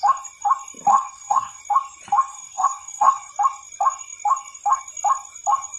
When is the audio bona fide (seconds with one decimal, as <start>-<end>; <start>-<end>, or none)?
0.0-0.9; 1.6-2.3; 3.3-5.8